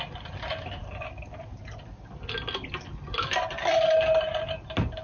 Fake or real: real